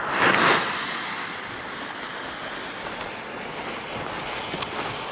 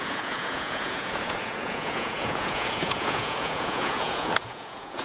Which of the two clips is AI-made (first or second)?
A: second